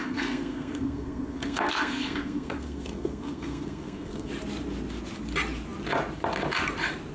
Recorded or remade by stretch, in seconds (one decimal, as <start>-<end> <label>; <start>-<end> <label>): 0.0-4.3 remade; 4.3-7.1 recorded